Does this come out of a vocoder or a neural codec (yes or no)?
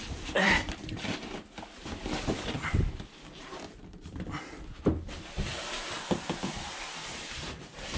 yes